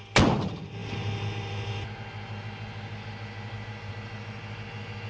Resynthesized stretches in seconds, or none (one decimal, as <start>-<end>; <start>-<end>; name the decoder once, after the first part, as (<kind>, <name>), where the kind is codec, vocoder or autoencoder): none